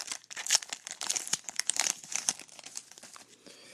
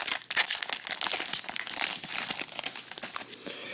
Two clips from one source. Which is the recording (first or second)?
second